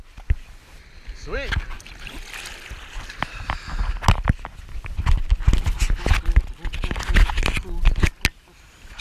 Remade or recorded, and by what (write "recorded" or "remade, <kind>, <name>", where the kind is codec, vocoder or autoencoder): recorded